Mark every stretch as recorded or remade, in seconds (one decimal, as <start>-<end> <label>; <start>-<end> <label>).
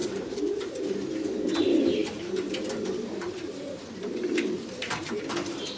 0.0-0.8 remade; 0.8-2.0 recorded; 2.0-5.1 remade; 5.1-5.8 recorded